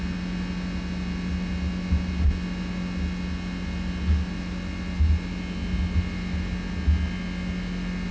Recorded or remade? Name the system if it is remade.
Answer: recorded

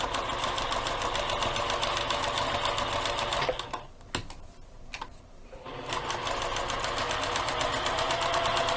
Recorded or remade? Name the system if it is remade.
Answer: recorded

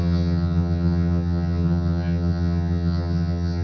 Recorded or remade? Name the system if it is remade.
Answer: remade, vocoder, HiFi-GAN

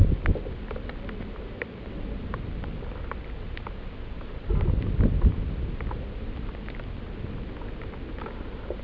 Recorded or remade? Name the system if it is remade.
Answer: recorded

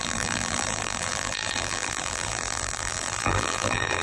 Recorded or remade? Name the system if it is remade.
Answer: remade, vocoder, BigVGAN v2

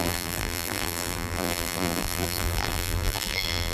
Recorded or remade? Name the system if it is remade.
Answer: remade, vocoder, BigVGAN v2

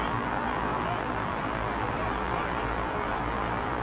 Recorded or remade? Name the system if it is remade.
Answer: remade, vocoder, BigVGAN v2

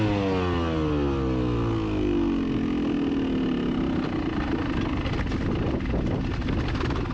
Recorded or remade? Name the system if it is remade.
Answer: recorded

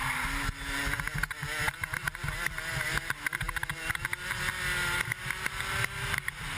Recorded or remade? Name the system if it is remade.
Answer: recorded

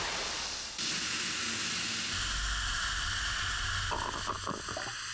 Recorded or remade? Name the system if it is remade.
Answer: recorded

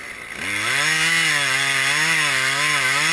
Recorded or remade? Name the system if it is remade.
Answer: recorded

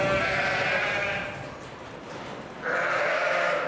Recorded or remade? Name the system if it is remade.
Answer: recorded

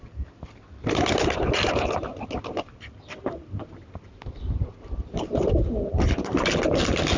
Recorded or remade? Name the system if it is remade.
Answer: recorded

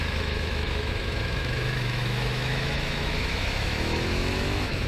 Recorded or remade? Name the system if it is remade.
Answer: remade, autoencoder, DAC-VAE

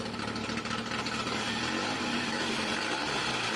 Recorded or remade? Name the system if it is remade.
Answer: recorded